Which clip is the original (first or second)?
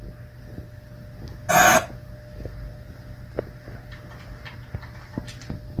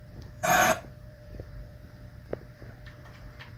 first